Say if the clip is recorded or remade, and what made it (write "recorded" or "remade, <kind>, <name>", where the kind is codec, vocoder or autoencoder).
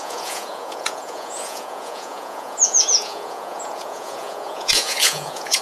remade, vocoder, Vocos